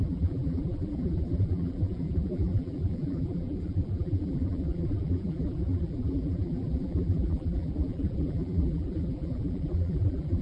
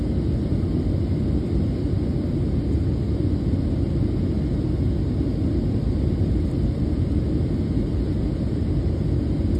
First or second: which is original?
second